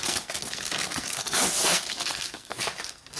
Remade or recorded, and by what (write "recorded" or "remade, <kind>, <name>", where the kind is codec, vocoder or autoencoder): remade, codec, SNAC